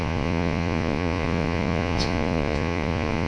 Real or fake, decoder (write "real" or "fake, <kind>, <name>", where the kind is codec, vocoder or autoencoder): fake, vocoder, Vocos